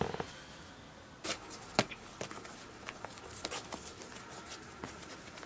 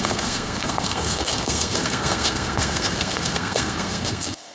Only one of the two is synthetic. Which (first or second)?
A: second